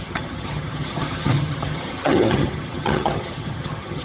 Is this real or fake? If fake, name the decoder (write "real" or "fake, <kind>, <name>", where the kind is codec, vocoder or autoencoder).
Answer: fake, vocoder, HiFi-GAN